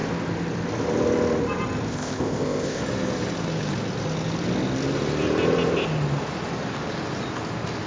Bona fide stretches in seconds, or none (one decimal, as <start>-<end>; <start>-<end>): 0.0-1.9; 2.8-7.9